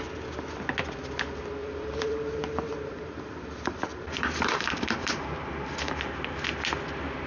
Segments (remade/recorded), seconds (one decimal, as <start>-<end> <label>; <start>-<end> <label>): 0.0-1.6 recorded; 1.6-6.0 remade; 6.0-7.3 recorded

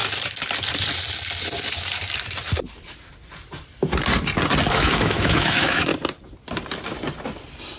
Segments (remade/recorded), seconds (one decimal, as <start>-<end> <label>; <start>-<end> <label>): 0.0-4.7 recorded; 4.7-5.9 remade; 5.9-7.8 recorded

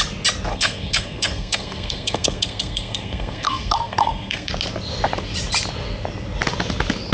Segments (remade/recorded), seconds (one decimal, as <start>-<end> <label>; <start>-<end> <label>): 0.0-0.5 recorded; 0.5-4.5 remade; 4.5-7.1 recorded